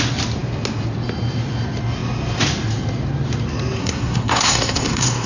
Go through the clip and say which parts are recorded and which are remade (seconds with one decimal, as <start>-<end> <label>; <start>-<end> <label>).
0.0-3.8 recorded; 3.8-5.3 remade